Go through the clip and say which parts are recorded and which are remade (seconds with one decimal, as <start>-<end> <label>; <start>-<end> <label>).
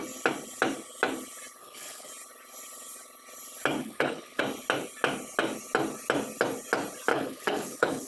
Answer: 0.0-1.6 recorded; 1.6-2.1 remade; 2.1-3.8 recorded; 3.8-4.4 remade; 4.4-7.1 recorded; 7.1-8.1 remade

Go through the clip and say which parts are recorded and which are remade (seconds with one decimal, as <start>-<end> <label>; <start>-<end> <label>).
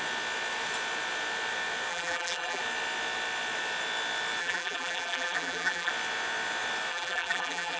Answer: 0.0-1.9 recorded; 1.9-2.6 remade; 2.6-4.4 recorded; 4.4-5.9 remade; 5.9-6.9 recorded; 6.9-7.8 remade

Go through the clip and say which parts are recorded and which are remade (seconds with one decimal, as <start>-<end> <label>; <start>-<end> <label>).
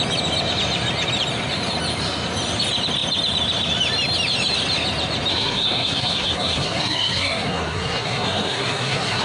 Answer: 0.0-5.3 recorded; 5.3-9.2 remade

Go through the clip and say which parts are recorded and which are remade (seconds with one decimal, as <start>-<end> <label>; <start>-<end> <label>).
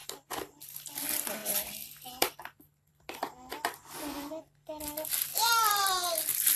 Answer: 0.0-0.9 remade; 0.9-1.4 recorded; 1.4-4.4 remade; 4.4-5.3 recorded; 5.3-6.1 remade; 6.1-6.6 recorded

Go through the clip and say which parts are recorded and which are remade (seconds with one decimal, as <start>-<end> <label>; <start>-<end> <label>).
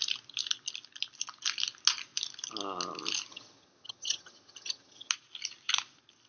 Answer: 0.0-3.3 recorded; 3.3-5.1 remade; 5.1-6.3 recorded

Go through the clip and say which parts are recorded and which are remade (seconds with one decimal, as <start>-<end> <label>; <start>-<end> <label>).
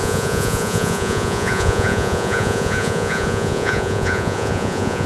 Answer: 0.0-5.1 remade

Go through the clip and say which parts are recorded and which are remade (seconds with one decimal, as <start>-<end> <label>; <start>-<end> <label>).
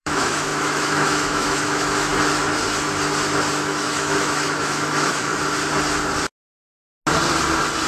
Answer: 0.0-2.1 remade; 2.1-3.6 recorded; 3.6-5.3 remade; 5.3-7.9 recorded